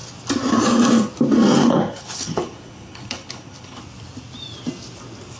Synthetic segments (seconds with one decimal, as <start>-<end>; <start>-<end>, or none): 1.6-3.8